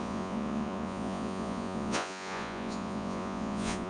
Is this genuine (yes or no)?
no